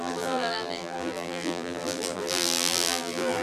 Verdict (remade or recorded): remade